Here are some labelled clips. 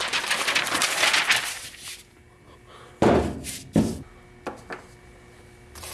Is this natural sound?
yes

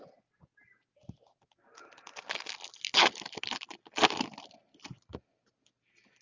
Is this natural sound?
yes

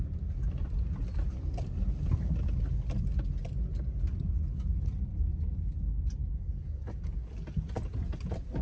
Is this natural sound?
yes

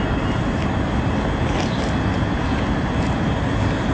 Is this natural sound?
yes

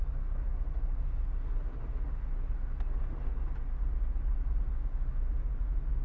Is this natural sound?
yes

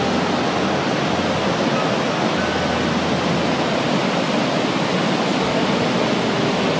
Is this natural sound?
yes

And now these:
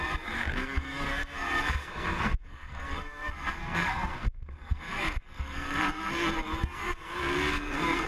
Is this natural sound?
no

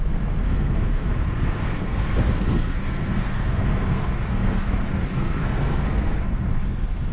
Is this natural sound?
no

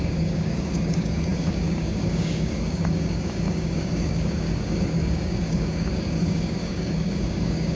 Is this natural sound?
no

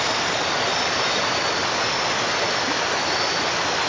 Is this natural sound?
yes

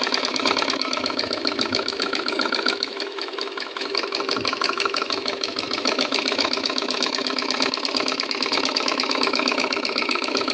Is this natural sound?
no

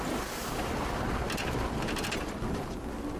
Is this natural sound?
yes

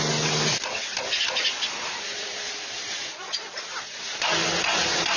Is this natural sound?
yes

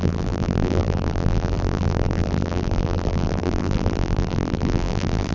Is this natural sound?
no